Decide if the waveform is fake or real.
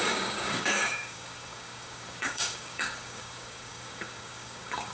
fake